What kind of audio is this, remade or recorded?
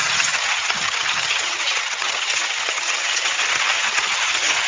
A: remade